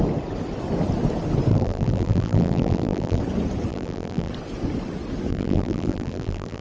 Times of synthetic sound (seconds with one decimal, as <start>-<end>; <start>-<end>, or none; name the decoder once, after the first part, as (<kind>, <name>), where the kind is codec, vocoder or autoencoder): 1.5-3.2 (vocoder, BigVGAN v2); 3.7-4.3; 5.3-6.6

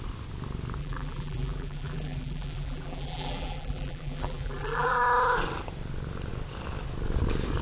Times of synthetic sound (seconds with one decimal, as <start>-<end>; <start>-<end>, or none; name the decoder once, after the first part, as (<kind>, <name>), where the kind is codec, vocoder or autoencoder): 0.8-5.0 (vocoder, BigVGAN v2)

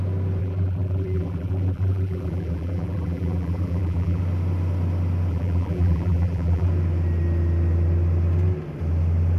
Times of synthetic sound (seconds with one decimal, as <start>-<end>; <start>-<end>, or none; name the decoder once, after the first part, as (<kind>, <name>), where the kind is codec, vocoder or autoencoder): 0.4-4.2 (vocoder, BigVGAN v2); 5.3-6.7

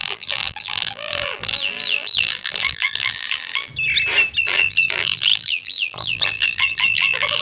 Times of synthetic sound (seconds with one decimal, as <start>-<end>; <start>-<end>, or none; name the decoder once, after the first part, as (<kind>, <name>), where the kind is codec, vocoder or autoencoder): 0.0-3.7 (vocoder, BigVGAN v2); 4.4-7.4

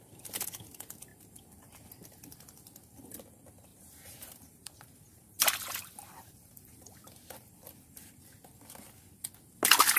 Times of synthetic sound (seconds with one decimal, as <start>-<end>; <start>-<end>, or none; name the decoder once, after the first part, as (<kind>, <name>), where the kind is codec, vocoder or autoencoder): 3.7-7.5 (vocoder, BigVGAN v2)

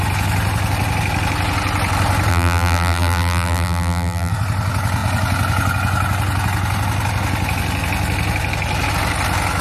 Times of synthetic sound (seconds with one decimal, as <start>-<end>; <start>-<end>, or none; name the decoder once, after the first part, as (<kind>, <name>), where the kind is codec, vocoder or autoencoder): 2.3-4.3 (vocoder, BigVGAN v2)

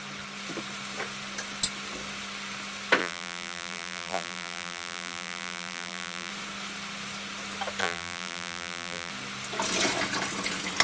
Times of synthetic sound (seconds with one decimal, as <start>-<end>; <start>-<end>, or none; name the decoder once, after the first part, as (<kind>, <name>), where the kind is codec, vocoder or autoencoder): 3.0-6.3 (vocoder, BigVGAN v2); 7.8-9.1